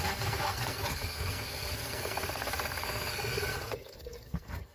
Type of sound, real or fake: fake